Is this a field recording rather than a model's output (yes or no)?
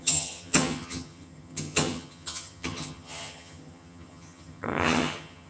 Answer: no